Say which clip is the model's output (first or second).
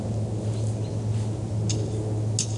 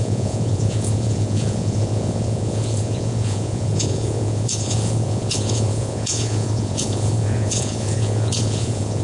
second